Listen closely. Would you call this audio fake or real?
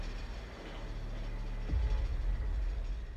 real